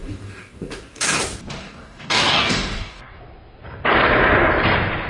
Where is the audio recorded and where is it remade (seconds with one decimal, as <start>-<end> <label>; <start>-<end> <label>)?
0.0-1.2 remade; 1.2-1.6 recorded; 1.6-3.2 remade; 3.2-5.1 recorded